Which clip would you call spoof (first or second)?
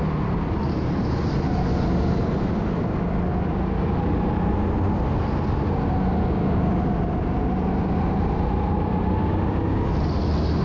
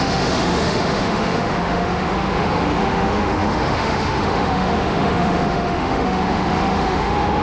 second